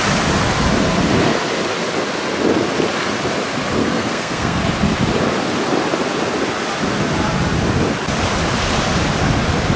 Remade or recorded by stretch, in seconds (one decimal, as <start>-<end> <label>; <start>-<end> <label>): 0.0-3.8 recorded; 3.8-4.6 remade; 4.6-9.8 recorded